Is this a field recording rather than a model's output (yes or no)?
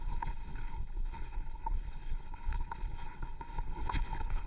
no